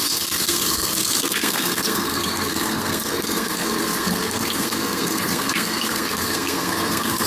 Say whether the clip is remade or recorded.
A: remade